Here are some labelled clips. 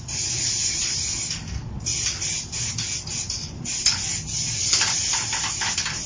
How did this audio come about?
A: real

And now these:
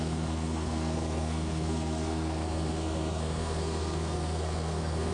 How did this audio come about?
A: fake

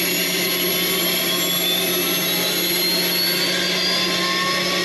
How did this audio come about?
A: real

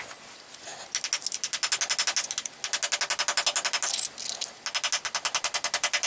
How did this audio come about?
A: real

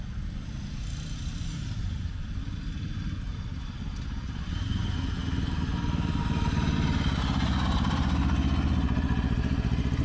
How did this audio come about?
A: real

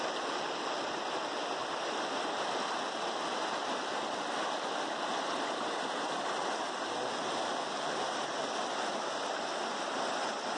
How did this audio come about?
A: real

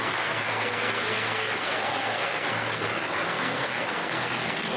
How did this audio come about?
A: fake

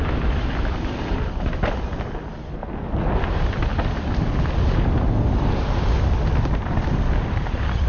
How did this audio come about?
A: real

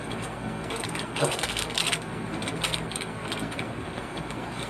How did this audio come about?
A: fake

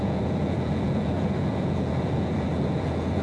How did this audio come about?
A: fake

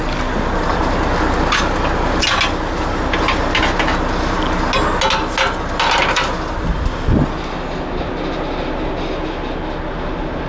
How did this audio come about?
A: real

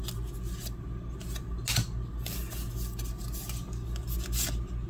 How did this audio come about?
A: real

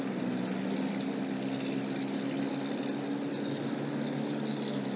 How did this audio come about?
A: real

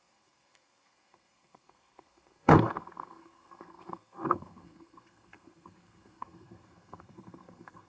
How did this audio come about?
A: fake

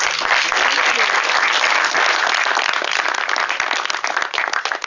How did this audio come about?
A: real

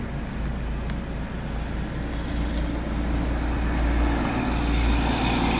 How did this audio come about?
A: real